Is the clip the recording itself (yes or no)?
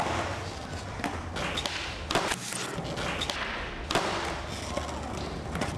yes